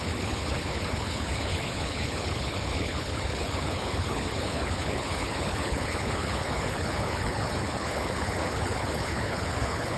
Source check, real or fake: fake